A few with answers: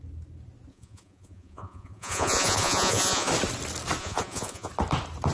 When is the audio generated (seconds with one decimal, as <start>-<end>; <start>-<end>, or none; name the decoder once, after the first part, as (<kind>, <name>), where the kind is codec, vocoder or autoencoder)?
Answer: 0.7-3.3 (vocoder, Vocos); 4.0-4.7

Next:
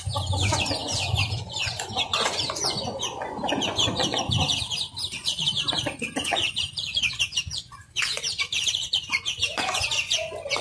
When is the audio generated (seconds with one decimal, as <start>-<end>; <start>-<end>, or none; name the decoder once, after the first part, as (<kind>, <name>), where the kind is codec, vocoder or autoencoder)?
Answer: 0.0-4.5 (vocoder, Vocos); 5.2-10.6

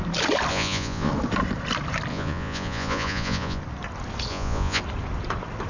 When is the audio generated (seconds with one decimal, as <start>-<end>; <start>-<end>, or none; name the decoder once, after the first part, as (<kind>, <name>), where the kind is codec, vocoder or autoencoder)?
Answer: 0.5-1.1 (vocoder, Vocos); 2.1-3.6; 4.3-4.8

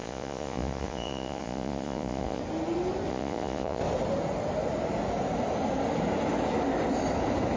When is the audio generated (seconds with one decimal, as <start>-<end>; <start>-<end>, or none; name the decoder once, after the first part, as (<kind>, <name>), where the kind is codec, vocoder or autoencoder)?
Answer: 0.0-2.4 (vocoder, Vocos); 3.1-3.8

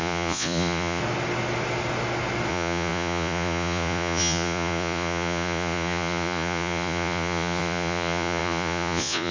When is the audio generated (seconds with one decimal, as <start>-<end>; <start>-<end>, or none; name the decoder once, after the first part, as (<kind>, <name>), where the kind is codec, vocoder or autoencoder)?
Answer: 0.0-1.0 (vocoder, Vocos); 2.5-9.3

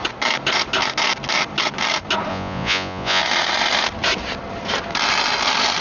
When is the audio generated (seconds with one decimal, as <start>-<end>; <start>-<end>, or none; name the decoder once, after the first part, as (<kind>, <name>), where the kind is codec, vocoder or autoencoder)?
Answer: 2.3-3.2 (vocoder, Vocos)

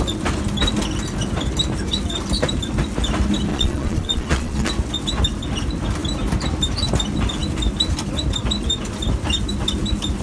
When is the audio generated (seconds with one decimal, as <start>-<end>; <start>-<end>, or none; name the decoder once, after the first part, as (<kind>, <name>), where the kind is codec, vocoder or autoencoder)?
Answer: 3.5-4.7 (vocoder, Vocos)

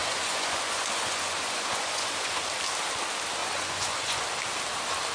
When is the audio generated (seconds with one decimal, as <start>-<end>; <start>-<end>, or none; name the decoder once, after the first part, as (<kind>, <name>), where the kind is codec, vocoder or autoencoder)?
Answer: 0.0-2.5 (vocoder, Vocos); 3.4-4.2